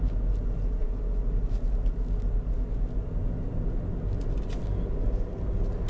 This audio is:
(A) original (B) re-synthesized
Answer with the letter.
A